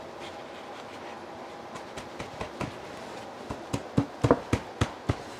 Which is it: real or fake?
real